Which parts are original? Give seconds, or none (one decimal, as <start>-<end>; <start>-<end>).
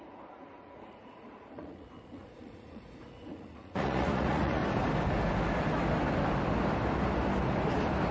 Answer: 4.6-8.1